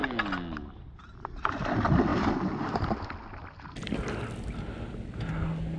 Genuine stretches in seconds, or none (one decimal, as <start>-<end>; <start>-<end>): 0.0-5.8